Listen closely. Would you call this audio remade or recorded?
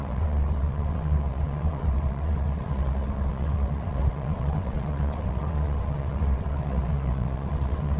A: remade